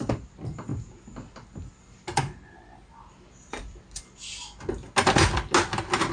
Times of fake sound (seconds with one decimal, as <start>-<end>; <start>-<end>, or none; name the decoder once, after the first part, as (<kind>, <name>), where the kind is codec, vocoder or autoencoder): none